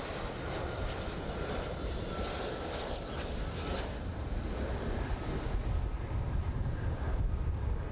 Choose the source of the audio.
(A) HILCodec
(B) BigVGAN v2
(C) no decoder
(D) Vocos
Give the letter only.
C